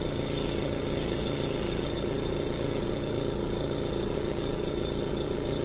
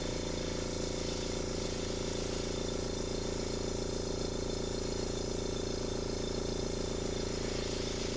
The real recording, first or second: second